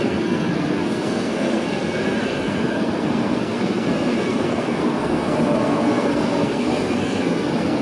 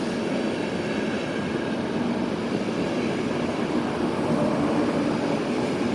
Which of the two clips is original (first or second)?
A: second